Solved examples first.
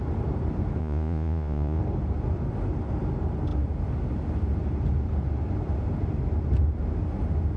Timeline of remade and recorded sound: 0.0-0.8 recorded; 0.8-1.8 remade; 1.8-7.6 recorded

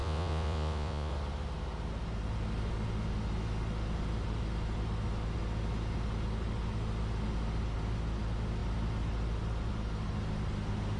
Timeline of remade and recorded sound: 0.0-1.1 remade; 1.1-11.0 recorded

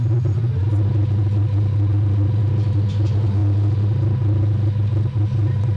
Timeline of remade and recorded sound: 0.0-5.8 recorded

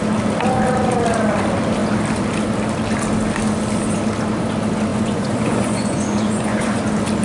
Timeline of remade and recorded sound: 0.0-4.9 recorded; 4.9-6.8 remade; 6.8-7.2 recorded

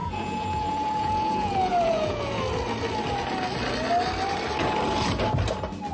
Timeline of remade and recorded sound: 0.0-2.4 remade; 2.4-5.9 recorded